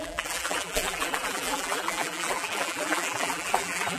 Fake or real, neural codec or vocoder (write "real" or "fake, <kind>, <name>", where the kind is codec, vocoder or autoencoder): fake, vocoder, BigVGAN v2